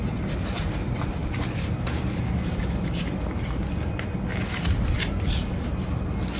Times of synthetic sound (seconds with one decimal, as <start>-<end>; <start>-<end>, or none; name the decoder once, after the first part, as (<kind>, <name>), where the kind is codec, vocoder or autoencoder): none